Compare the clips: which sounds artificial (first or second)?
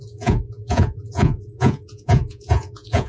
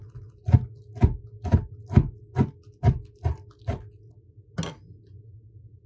first